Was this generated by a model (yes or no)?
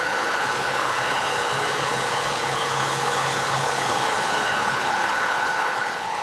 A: yes